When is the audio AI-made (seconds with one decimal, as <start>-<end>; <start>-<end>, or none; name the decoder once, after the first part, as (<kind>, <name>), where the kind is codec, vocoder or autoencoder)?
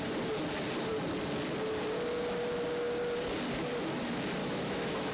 4.4-5.1 (autoencoder, DAC-VAE)